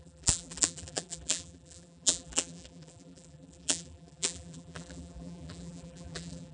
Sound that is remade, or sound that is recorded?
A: remade